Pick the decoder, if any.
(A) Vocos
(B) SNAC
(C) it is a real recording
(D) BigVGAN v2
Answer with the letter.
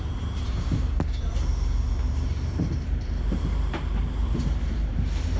D